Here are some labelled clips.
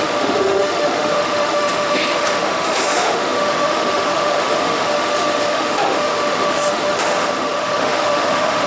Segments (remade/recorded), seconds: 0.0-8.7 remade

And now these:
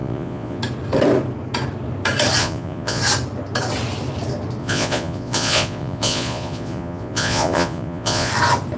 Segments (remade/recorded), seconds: 0.0-0.6 remade; 0.6-2.4 recorded; 2.4-3.0 remade; 3.0-4.6 recorded; 4.6-8.3 remade; 8.3-8.8 recorded

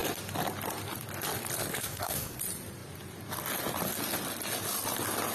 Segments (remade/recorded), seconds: 0.0-1.7 recorded; 1.7-2.4 remade; 2.4-5.3 recorded

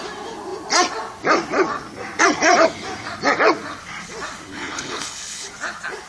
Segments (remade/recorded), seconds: 0.0-4.5 recorded; 4.5-5.5 remade; 5.5-6.1 recorded

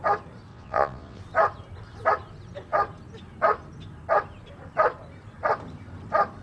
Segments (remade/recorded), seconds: 0.0-0.5 recorded; 0.5-1.2 remade; 1.2-6.4 recorded